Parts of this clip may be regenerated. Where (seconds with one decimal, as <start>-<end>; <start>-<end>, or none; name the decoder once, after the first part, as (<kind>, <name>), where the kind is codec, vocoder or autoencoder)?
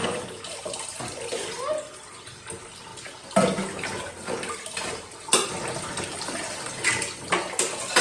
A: none